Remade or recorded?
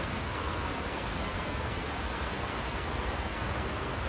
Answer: remade